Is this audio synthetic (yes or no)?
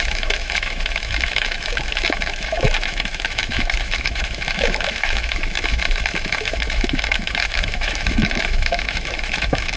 yes